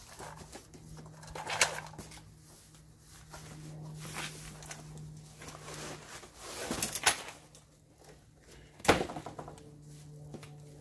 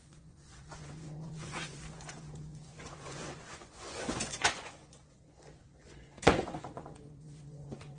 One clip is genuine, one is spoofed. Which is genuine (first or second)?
first